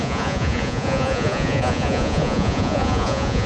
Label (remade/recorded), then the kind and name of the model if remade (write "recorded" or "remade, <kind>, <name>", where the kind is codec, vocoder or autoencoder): remade, vocoder, Vocos